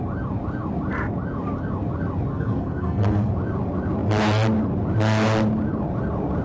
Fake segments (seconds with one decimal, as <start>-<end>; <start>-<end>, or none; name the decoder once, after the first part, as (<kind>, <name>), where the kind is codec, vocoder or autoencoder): 2.3-3.3 (codec, SNAC)